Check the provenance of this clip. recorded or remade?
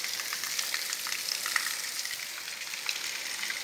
recorded